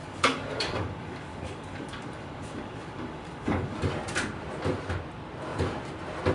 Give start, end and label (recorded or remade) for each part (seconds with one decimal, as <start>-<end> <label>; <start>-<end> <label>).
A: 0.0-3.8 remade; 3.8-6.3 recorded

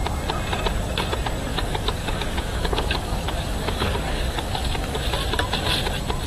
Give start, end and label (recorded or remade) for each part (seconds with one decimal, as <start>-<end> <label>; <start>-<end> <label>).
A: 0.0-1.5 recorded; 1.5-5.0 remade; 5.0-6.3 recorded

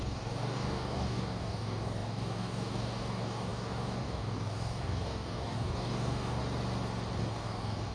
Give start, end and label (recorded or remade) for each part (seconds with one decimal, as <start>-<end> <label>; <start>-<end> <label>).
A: 0.0-6.4 remade; 6.4-7.2 recorded; 7.2-7.9 remade

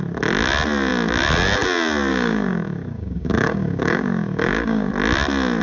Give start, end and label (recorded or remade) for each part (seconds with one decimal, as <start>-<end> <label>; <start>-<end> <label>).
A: 0.0-2.1 recorded; 2.1-4.9 remade; 4.9-5.6 recorded

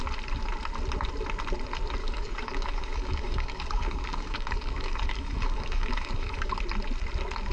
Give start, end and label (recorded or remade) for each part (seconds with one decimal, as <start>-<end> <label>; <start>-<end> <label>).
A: 0.0-2.0 recorded; 2.0-6.5 remade; 6.5-7.5 recorded

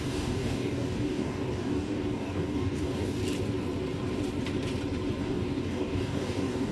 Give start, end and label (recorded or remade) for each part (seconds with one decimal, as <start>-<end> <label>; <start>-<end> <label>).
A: 0.0-3.2 remade; 3.2-5.2 recorded; 5.2-6.7 remade